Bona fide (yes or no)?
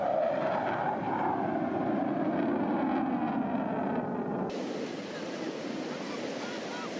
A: yes